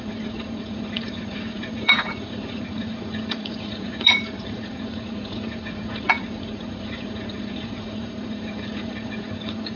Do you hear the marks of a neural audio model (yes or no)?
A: yes